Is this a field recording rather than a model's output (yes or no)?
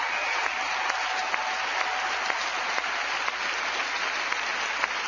yes